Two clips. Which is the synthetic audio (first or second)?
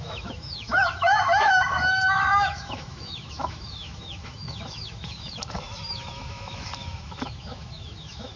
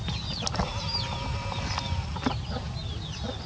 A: first